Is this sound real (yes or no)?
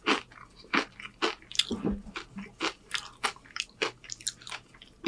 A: yes